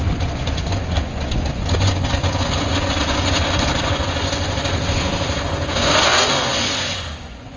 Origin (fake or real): fake